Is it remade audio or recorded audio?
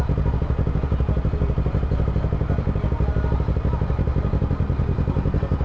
recorded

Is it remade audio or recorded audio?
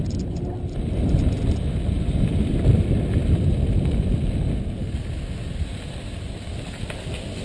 recorded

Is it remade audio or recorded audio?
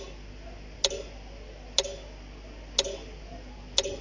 recorded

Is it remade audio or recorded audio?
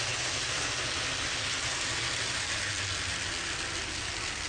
recorded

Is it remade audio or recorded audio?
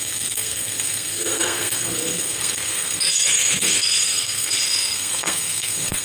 remade